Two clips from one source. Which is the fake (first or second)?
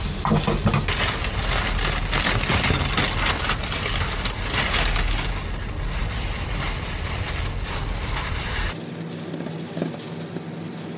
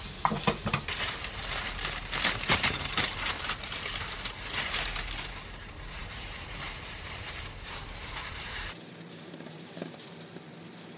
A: second